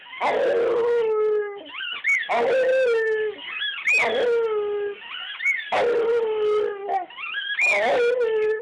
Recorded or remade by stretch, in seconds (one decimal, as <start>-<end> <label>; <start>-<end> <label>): 0.0-8.6 recorded